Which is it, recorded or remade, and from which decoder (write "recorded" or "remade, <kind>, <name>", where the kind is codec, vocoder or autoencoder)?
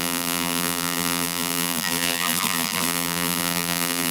remade, vocoder, BigVGAN v2